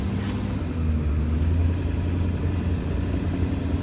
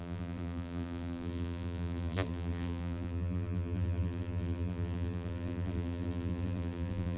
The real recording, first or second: first